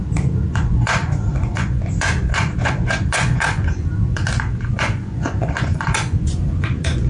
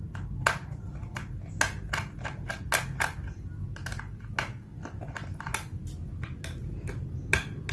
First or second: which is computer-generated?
first